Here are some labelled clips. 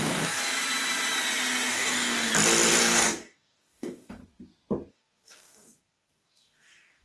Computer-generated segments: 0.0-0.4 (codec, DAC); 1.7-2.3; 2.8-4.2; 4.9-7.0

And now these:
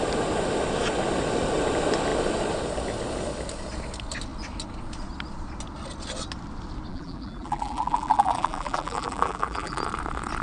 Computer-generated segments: 6.9-9.8 (vocoder, BigVGAN v2)

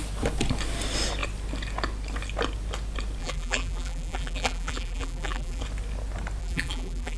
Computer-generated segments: 3.2-5.6 (vocoder, BigVGAN v2); 6.4-7.2

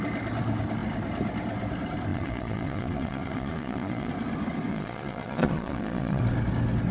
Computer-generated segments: 2.1-4.1 (vocoder, Vocos); 4.7-6.2

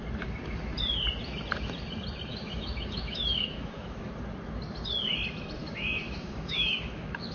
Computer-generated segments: 2.3-4.1 (autoencoder, DAC-VAE); 5.6-7.3

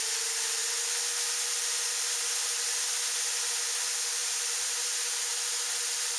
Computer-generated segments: 4.2-5.2 (vocoder, BigVGAN v2)

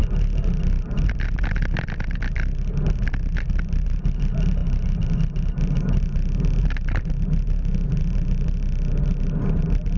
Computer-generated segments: none

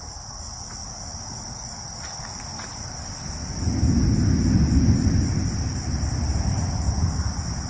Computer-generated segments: none